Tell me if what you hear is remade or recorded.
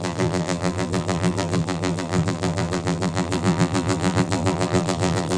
remade